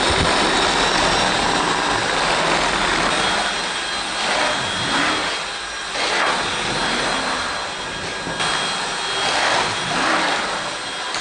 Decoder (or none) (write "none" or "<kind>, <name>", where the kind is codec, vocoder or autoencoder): none